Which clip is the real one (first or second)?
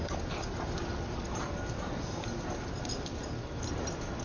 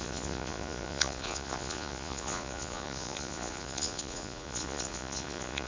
first